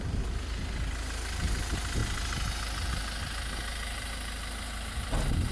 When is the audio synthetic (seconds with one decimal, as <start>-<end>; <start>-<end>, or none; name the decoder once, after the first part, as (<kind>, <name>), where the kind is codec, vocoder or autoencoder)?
none